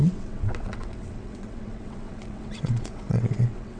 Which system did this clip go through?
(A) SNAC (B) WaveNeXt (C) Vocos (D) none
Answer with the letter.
B